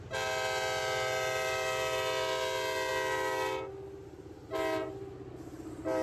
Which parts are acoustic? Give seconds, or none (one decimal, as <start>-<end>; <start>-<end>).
0.0-6.0